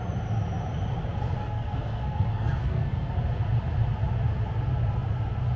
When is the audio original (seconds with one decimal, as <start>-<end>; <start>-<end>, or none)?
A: 0.0-1.4; 3.1-5.6

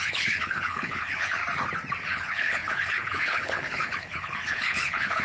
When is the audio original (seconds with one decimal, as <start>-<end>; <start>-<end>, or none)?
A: 1.4-2.0

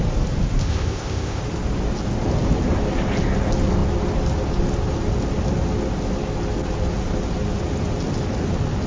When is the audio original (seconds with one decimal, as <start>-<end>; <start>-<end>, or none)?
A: 0.0-0.6; 1.4-8.9

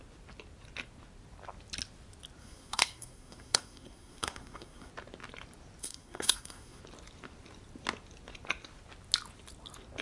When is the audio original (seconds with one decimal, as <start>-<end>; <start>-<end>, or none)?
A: 0.0-2.4; 4.9-5.8; 6.8-10.0